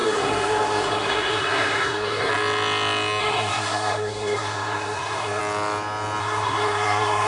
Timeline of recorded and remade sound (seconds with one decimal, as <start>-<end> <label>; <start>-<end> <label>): 0.0-2.3 remade; 2.3-3.2 recorded; 3.2-5.4 remade; 5.4-6.2 recorded; 6.2-7.3 remade